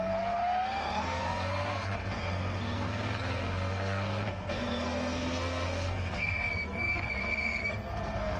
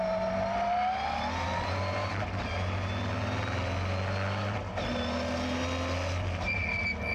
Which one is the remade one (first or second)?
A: first